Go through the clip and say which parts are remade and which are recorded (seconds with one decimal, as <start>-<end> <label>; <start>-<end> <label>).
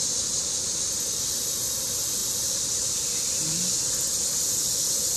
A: 0.0-5.2 recorded